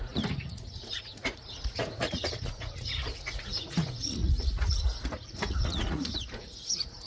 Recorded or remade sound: remade